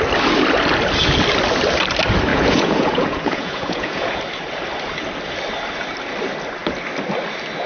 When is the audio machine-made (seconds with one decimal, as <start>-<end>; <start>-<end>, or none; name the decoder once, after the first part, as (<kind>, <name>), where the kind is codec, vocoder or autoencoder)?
2.3-4.2 (vocoder, Vocos)